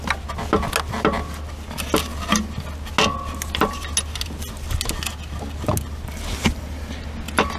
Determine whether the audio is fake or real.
real